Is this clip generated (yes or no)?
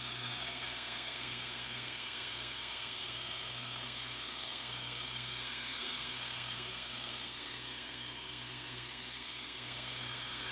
yes